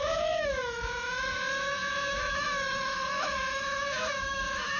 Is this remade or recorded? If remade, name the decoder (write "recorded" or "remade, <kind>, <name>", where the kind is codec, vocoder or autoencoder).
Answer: remade, autoencoder, DAC-VAE